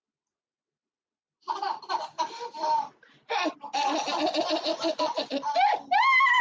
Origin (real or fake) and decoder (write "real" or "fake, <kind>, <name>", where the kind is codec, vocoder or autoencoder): real